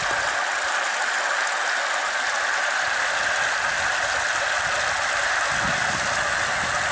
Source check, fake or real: real